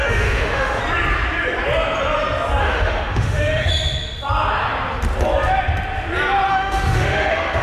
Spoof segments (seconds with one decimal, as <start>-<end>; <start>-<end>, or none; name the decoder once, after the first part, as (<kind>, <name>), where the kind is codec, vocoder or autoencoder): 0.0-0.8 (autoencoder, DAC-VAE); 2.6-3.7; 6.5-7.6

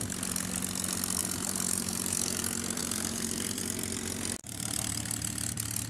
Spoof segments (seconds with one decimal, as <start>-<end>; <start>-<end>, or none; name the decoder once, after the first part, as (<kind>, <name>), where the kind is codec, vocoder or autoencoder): 1.2-2.4 (vocoder, BigVGAN v2); 2.8-3.6; 4.4-4.9

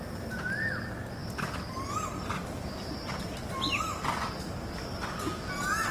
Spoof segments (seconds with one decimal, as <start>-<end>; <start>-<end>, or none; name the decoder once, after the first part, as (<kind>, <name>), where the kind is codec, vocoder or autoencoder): none

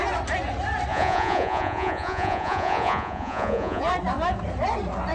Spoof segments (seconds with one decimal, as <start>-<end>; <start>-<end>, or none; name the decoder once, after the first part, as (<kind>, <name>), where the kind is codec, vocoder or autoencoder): 0.9-3.8 (vocoder, Vocos)

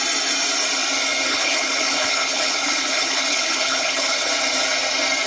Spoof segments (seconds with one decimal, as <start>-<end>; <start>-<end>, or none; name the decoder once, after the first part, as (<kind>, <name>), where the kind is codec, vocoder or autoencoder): 1.3-4.3 (codec, HILCodec)

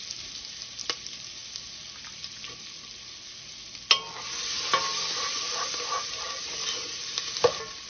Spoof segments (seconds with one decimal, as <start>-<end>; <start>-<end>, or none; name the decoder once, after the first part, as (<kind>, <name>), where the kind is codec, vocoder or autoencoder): none

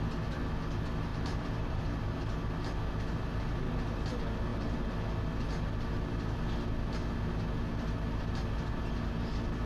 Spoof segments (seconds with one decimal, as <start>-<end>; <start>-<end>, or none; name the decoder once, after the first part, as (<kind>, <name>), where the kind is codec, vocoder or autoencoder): 1.1-1.9 (vocoder, BigVGAN v2)

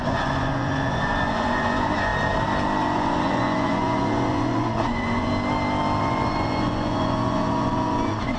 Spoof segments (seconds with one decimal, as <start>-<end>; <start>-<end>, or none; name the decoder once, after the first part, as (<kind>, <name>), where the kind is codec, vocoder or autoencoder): 0.0-2.1 (vocoder, Vocos); 2.8-5.3; 6.0-8.4